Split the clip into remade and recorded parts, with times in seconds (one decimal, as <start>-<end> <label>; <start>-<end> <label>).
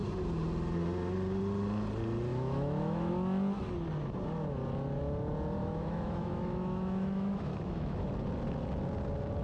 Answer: 0.0-2.3 recorded; 2.3-3.1 remade; 3.1-5.6 recorded; 5.6-8.1 remade; 8.1-9.4 recorded